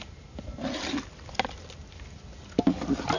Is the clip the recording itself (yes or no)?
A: yes